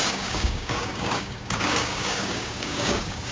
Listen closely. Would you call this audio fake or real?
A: fake